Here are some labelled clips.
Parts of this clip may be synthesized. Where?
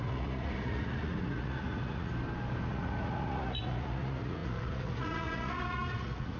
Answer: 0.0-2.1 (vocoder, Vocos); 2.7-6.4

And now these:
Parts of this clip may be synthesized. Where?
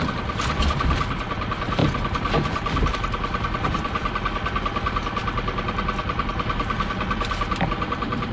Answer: none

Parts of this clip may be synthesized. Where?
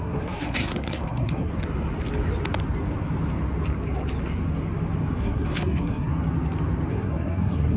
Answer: 0.0-1.5 (codec, SNAC); 5.2-6.1; 6.9-7.8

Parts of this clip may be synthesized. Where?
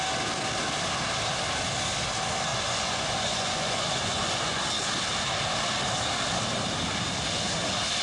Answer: 2.5-4.6 (vocoder, Vocos)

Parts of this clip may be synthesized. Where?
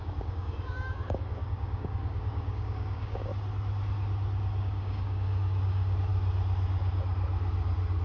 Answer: 0.0-3.3 (codec, DAC); 4.6-6.1